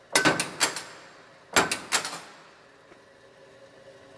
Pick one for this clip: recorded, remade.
recorded